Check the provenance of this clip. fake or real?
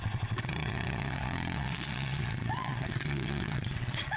fake